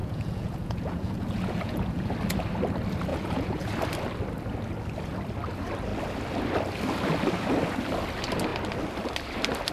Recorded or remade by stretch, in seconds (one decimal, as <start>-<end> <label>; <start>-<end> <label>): 0.0-2.1 remade; 2.1-3.1 recorded; 3.1-3.7 remade; 3.7-9.7 recorded

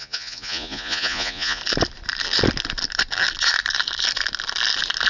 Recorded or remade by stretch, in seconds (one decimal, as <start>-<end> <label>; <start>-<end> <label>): 0.0-1.6 remade; 1.6-5.1 recorded

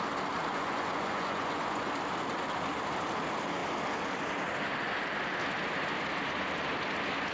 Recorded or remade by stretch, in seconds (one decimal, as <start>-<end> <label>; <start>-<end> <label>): 0.0-0.5 recorded; 0.5-1.9 remade; 1.9-7.3 recorded

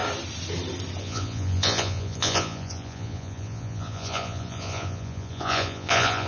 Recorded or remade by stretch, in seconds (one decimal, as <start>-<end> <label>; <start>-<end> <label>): 0.0-1.0 recorded; 1.0-6.3 remade

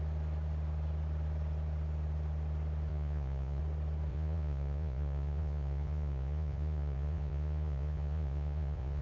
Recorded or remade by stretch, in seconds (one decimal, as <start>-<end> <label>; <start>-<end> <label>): 0.0-2.9 recorded; 2.9-3.6 remade; 3.6-4.1 recorded; 4.1-9.0 remade

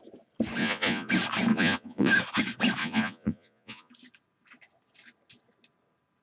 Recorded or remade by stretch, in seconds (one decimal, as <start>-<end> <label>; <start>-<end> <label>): 0.0-0.6 recorded; 0.6-1.1 remade; 1.1-1.5 recorded; 1.5-2.1 remade; 2.1-2.8 recorded; 2.8-3.9 remade; 3.9-6.2 recorded

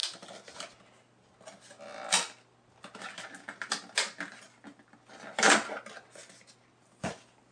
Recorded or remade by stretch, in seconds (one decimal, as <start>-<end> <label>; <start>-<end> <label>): 0.0-7.5 recorded